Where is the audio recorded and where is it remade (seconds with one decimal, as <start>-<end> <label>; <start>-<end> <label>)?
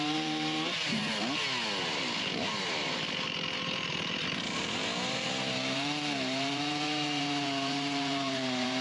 0.0-1.0 remade; 1.0-1.8 recorded; 1.8-8.8 remade